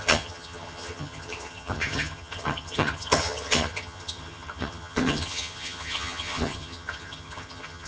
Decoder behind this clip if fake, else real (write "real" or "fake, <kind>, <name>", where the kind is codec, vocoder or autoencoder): fake, vocoder, HiFi-GAN